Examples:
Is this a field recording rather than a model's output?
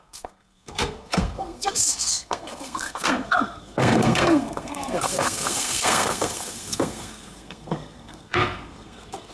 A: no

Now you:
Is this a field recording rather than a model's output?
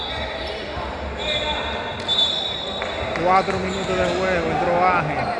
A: yes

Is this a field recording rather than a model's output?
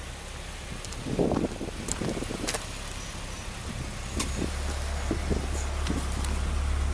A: yes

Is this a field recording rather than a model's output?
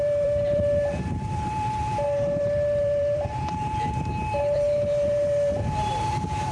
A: no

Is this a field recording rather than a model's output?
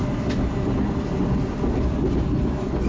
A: yes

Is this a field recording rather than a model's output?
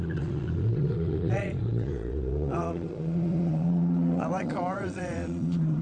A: no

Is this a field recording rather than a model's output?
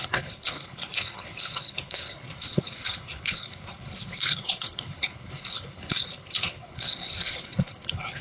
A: no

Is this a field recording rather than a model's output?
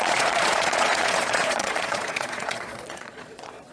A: no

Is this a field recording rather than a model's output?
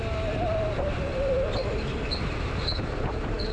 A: yes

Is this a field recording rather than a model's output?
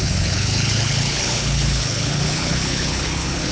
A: no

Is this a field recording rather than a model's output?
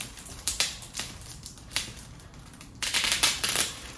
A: no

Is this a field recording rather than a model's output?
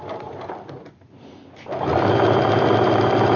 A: yes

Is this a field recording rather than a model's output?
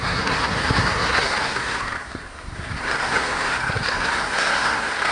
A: no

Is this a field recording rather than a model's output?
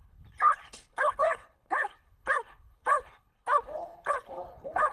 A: no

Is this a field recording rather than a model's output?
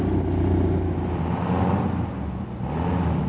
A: yes